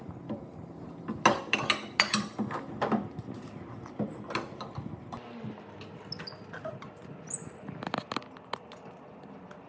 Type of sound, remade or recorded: recorded